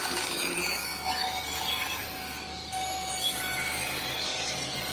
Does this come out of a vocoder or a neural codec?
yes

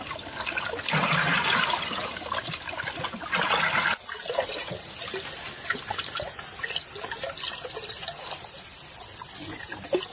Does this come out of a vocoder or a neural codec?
no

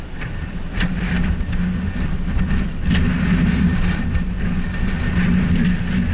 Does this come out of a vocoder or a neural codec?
no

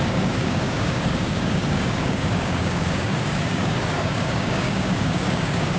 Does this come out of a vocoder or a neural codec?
yes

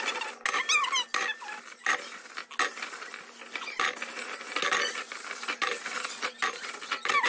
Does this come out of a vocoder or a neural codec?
no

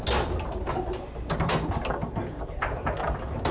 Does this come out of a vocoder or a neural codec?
no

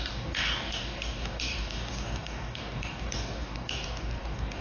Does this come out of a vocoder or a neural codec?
yes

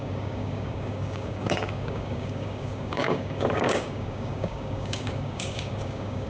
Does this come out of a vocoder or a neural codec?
yes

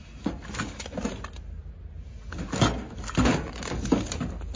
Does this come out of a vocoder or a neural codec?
no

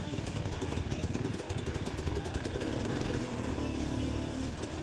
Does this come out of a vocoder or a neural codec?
yes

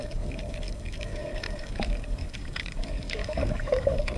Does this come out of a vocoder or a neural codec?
yes